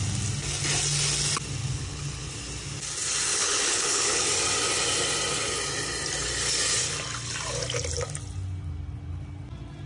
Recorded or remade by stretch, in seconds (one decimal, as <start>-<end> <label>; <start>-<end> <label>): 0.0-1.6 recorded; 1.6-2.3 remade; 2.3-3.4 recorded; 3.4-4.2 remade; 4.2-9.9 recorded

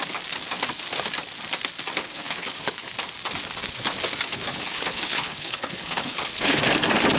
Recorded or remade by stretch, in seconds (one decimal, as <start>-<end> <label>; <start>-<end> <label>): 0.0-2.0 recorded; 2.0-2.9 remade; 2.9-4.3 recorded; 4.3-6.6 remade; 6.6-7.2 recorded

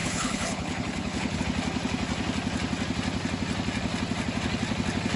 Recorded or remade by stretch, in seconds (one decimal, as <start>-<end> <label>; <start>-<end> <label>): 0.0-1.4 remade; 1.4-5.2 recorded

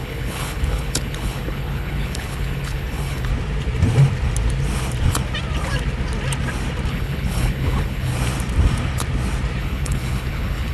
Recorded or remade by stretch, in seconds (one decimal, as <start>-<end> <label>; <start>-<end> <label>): 0.0-3.3 remade; 3.3-6.9 recorded; 6.9-8.1 remade; 8.1-9.6 recorded; 9.6-10.7 remade

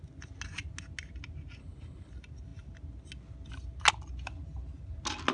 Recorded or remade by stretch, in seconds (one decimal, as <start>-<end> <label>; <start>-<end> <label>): 0.0-1.6 recorded; 1.6-2.1 remade; 2.1-5.3 recorded

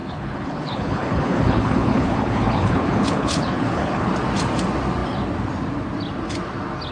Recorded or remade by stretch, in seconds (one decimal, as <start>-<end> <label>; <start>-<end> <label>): 0.0-4.1 remade; 4.1-6.9 recorded

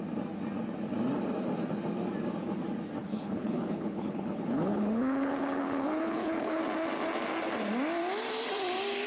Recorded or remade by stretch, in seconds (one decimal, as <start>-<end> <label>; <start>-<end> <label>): 0.0-3.0 recorded; 3.0-6.6 remade; 6.6-9.1 recorded

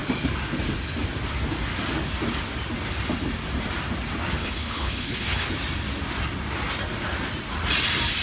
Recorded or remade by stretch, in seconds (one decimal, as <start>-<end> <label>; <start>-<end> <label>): 0.0-4.4 recorded; 4.4-5.5 remade; 5.5-8.2 recorded